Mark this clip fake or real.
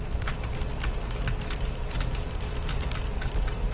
real